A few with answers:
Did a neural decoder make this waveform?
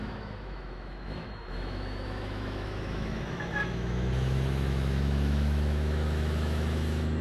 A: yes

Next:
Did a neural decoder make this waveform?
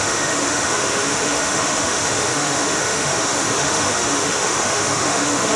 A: yes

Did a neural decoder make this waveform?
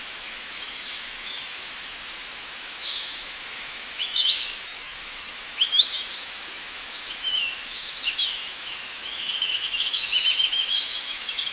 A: yes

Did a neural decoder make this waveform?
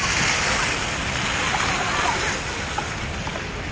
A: no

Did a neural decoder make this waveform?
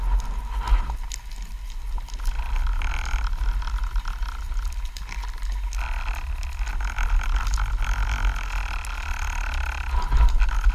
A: no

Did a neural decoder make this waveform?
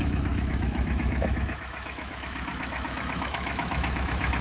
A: yes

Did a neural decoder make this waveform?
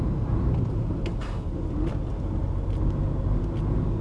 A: no